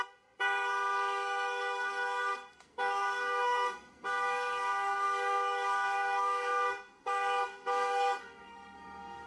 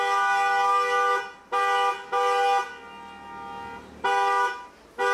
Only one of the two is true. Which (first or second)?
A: second